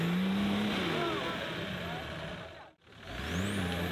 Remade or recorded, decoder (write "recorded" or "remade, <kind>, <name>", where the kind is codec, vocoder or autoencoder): recorded